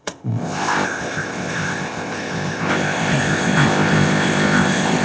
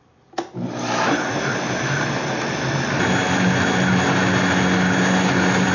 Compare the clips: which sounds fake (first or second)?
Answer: first